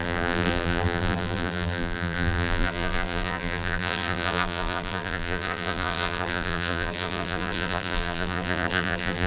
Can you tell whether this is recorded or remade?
remade